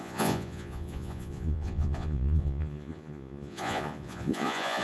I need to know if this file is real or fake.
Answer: fake